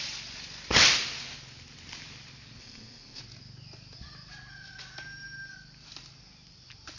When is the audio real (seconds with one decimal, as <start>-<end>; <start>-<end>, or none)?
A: 0.0-2.6; 3.2-7.0